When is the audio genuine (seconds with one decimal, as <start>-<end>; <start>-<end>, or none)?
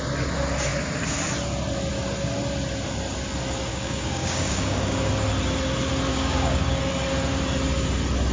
0.0-3.7; 5.1-6.1; 6.8-8.3